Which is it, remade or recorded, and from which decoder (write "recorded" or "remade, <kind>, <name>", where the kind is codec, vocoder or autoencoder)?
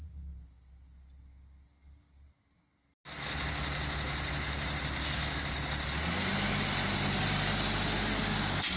recorded